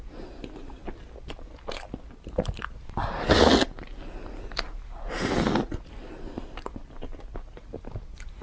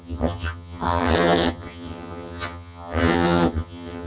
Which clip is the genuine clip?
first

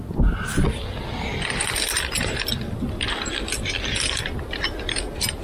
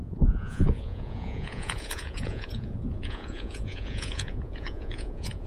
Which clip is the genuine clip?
first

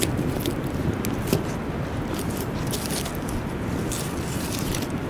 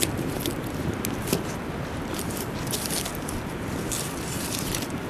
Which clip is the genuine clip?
first